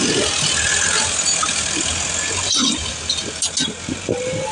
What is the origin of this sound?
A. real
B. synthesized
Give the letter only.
A